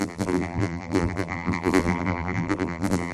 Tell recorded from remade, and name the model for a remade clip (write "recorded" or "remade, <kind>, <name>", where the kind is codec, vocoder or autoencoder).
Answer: remade, vocoder, BigVGAN v2